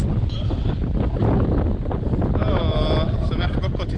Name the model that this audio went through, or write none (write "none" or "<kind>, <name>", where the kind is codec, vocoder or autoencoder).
none